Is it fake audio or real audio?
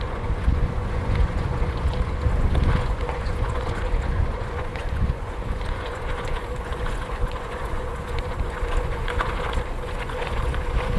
fake